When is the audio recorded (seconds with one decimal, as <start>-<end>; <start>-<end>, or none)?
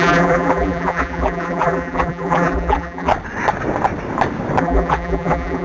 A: 3.1-4.6